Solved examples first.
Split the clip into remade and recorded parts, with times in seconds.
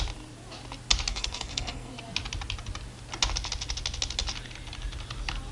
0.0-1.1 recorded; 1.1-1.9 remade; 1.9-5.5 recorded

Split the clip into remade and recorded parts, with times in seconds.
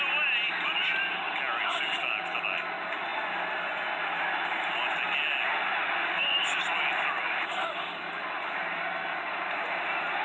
0.0-10.2 recorded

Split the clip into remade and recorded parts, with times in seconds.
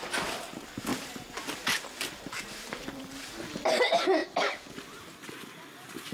0.0-0.9 recorded; 0.9-3.7 remade; 3.7-6.1 recorded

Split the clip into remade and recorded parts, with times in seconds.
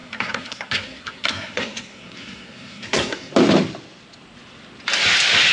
0.0-3.3 remade; 3.3-5.5 recorded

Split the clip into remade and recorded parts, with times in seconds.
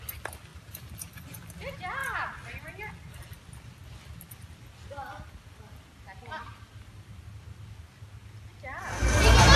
0.0-0.5 recorded; 0.5-1.5 remade; 1.5-9.6 recorded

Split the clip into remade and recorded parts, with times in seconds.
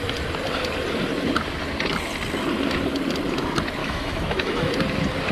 0.0-3.8 recorded; 3.8-4.7 remade; 4.7-5.3 recorded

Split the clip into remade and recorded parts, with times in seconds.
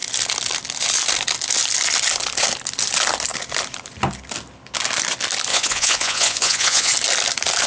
0.0-5.5 recorded; 5.5-6.9 remade; 6.9-7.7 recorded